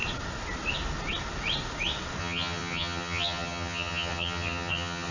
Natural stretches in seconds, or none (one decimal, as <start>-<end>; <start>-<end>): 0.0-2.2